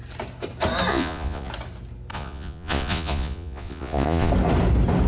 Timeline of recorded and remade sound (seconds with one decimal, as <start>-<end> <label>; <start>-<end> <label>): 0.0-0.9 recorded; 0.9-1.5 remade; 1.5-2.1 recorded; 2.1-4.3 remade; 4.3-5.1 recorded

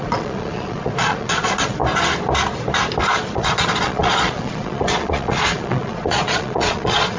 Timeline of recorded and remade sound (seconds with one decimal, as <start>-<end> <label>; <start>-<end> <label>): 0.0-1.8 remade; 1.8-3.0 recorded; 3.0-7.2 remade

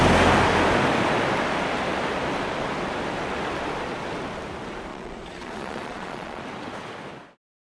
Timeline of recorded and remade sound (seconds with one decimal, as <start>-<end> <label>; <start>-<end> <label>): 0.0-4.9 recorded; 4.9-6.4 remade; 6.4-7.8 recorded

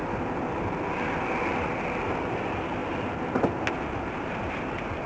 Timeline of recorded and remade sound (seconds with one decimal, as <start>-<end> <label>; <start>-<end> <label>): 0.0-5.1 recorded

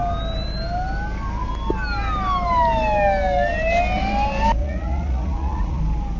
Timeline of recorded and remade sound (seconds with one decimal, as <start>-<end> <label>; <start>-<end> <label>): 0.0-4.6 recorded; 4.6-5.8 remade; 5.8-6.2 recorded

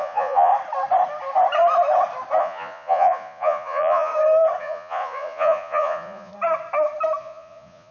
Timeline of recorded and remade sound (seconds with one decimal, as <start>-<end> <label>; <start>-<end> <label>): 0.0-0.5 remade; 0.5-2.4 recorded; 2.4-4.1 remade; 4.1-4.6 recorded; 4.6-6.3 remade; 6.3-7.2 recorded; 7.2-7.9 remade

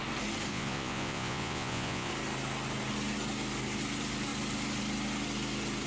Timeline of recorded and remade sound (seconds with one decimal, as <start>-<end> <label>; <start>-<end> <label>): 0.0-0.5 recorded; 0.5-2.1 remade; 2.1-5.9 recorded

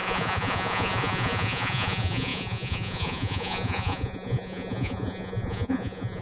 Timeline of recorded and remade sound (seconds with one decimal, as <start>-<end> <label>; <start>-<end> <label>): 0.0-6.2 remade